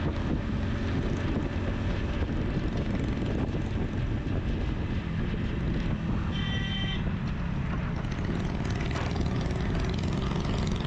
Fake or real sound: real